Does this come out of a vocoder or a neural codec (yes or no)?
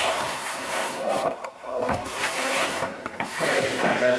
yes